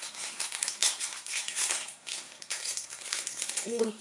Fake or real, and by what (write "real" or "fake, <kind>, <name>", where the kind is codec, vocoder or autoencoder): fake, codec, SNAC